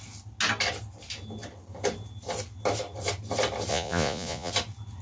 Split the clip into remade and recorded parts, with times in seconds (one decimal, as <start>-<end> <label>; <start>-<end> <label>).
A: 0.0-3.7 recorded; 3.7-4.5 remade; 4.5-5.0 recorded